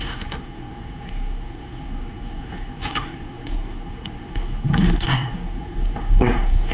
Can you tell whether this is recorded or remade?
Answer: remade